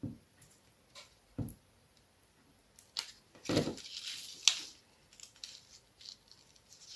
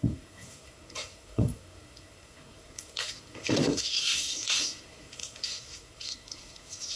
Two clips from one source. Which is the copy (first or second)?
second